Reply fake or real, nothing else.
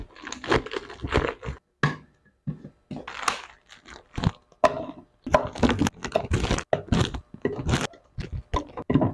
real